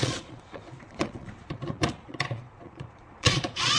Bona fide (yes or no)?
no